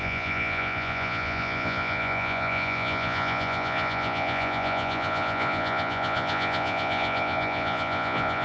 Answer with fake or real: fake